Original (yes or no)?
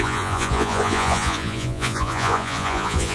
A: no